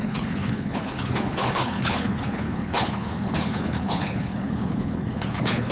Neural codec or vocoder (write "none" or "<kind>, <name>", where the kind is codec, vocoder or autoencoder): codec, HILCodec